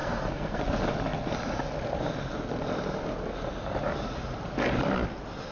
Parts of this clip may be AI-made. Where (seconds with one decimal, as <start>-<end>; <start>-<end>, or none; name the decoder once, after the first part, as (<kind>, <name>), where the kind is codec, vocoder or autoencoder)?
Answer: 0.0-0.6 (codec, SNAC)